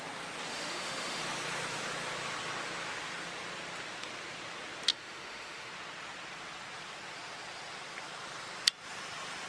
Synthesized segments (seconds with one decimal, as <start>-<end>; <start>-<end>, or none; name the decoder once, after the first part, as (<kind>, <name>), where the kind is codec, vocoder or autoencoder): 0.5-1.2 (autoencoder, DAC-VAE); 4.9-5.7

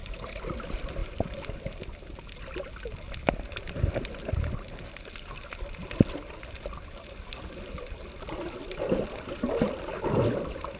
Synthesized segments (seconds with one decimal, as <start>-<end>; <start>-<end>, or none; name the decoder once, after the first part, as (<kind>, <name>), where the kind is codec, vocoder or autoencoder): none

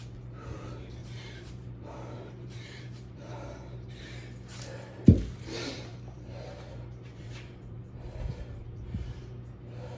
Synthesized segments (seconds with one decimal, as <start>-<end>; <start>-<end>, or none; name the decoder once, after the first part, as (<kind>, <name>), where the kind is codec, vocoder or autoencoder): 1.0-4.0 (vocoder, BigVGAN v2); 5.9-8.8

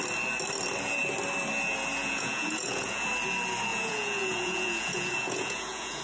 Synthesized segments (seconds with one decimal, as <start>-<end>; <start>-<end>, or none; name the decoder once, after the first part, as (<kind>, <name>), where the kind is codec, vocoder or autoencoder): 2.0-3.1 (vocoder, Vocos); 3.7-6.0

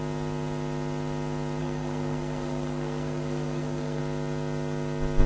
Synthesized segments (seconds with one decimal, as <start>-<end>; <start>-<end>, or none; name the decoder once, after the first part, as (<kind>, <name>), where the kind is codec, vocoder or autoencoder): 1.6-4.0 (codec, SNAC)

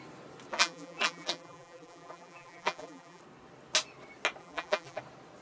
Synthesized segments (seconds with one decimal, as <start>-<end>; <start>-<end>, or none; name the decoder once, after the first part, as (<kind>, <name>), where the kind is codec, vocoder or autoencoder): 0.5-3.2 (vocoder, BigVGAN v2); 4.4-5.0

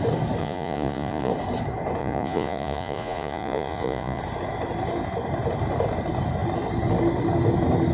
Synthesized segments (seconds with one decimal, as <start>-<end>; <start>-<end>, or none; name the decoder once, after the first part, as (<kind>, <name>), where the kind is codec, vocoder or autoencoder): 0.4-1.3 (vocoder, Vocos); 2.0-4.2